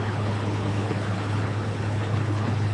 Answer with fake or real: fake